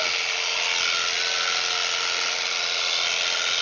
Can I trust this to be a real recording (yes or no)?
yes